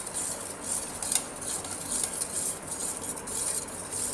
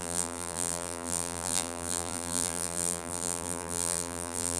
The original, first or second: first